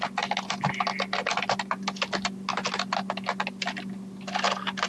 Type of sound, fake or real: real